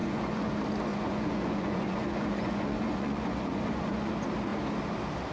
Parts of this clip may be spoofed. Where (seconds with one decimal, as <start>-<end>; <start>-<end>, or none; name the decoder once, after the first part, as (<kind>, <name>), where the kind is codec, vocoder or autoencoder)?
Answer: 0.0-0.5 (vocoder, Vocos); 0.9-4.1